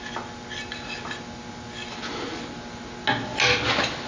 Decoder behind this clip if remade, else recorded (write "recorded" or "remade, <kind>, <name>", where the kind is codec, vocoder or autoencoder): recorded